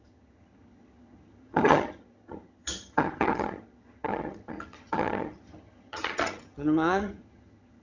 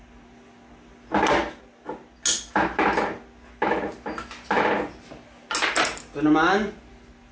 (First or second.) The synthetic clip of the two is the first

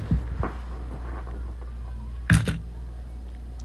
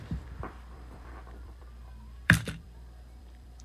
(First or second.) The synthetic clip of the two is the second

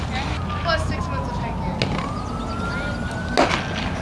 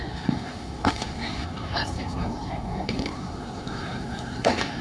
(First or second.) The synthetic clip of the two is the second